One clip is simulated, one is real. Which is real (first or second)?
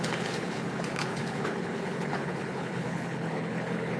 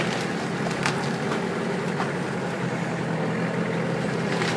second